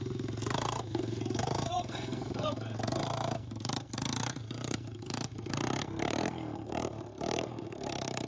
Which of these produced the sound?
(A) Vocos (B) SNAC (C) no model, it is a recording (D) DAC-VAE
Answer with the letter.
B